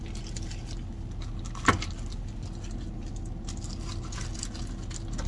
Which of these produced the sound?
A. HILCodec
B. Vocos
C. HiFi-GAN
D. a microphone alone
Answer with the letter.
D